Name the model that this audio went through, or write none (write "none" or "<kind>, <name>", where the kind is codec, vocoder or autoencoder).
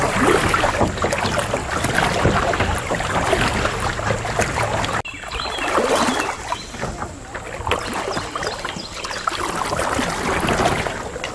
none